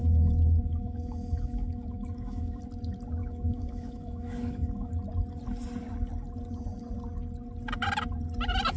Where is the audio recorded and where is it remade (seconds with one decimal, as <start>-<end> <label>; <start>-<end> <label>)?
0.0-2.6 remade; 2.6-3.2 recorded; 3.2-4.9 remade; 4.9-8.8 recorded